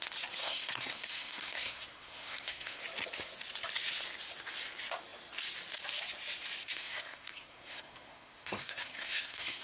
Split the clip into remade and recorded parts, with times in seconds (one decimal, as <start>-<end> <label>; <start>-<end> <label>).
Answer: 0.0-0.4 recorded; 0.4-2.8 remade; 2.8-6.6 recorded; 6.6-9.6 remade